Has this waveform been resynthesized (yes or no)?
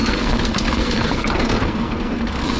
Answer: yes